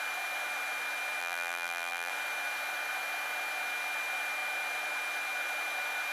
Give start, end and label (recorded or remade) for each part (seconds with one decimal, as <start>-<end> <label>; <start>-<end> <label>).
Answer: 0.0-1.2 recorded; 1.2-2.1 remade; 2.1-6.1 recorded